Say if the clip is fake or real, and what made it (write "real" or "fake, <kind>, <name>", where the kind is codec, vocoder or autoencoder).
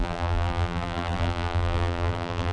fake, vocoder, BigVGAN v2